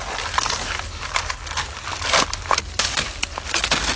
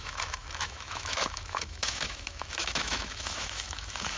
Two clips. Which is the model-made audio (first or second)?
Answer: second